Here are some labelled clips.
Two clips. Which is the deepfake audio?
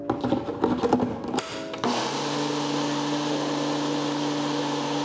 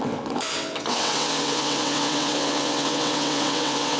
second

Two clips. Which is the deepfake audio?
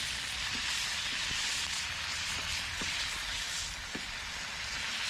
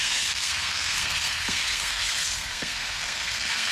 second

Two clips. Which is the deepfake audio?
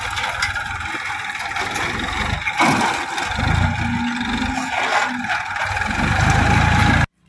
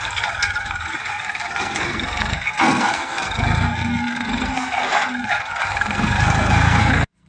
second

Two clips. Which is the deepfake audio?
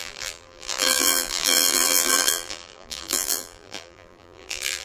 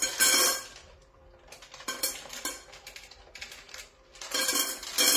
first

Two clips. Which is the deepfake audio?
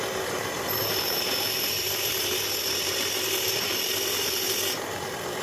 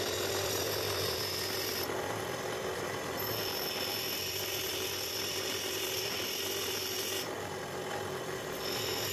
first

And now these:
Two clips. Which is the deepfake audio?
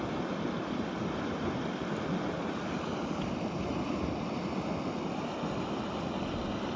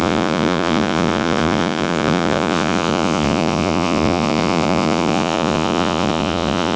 second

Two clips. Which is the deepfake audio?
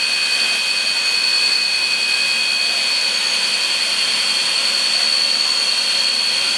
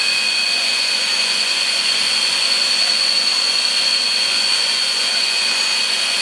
second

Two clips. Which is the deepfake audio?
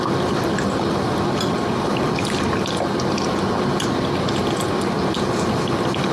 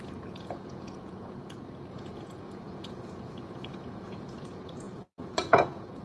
second